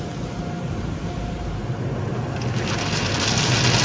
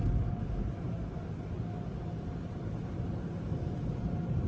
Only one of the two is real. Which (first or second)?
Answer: first